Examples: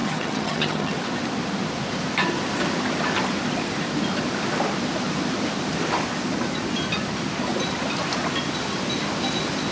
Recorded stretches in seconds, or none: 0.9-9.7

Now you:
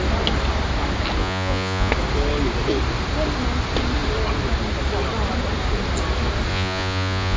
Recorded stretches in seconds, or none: 0.0-1.2; 1.9-6.5

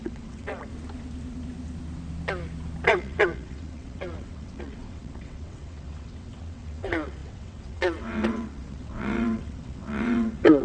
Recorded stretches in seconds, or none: 0.7-2.9

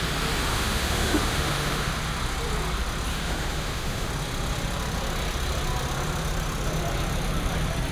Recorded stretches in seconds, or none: 0.0-0.5; 1.9-3.1; 4.1-7.9

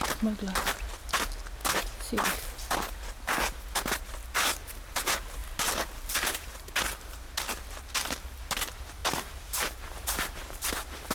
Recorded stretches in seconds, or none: 0.0-4.5; 5.0-5.4; 6.8-9.0; 10.7-11.1

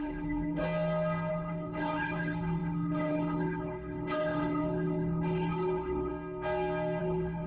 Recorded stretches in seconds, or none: 0.6-1.3; 6.1-7.0